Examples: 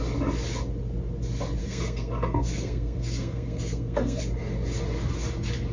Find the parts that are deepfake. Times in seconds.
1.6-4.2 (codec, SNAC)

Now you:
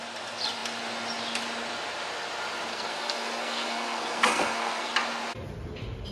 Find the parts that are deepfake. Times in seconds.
2.7-4.9 (codec, SNAC)

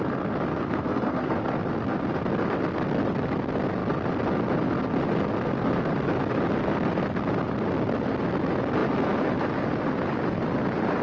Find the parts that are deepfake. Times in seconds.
0.5-1.4 (codec, SNAC)